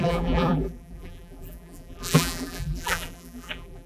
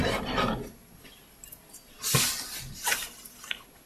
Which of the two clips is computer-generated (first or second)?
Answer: first